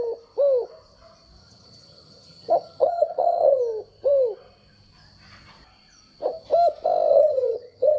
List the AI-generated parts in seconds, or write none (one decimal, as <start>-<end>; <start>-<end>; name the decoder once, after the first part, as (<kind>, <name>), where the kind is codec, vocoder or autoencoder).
1.4-3.6 (vocoder, HiFi-GAN); 7.1-8.0